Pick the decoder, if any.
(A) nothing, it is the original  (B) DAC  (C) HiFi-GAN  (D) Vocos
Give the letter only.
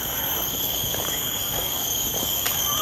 B